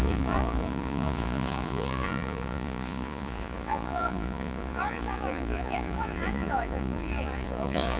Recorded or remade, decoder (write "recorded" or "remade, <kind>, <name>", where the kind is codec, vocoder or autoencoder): remade, vocoder, Vocos